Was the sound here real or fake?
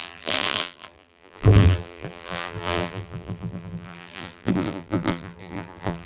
fake